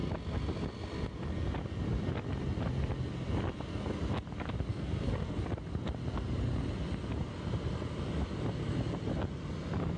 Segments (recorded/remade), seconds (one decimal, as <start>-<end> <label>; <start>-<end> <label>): 0.0-4.7 recorded; 4.7-5.4 remade; 5.4-10.0 recorded